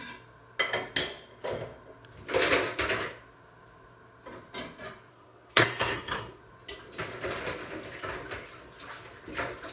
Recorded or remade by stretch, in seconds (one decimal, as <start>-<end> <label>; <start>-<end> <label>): 0.0-5.1 recorded; 5.1-6.4 remade; 6.4-9.7 recorded